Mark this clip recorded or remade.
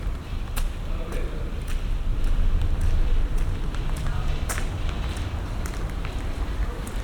remade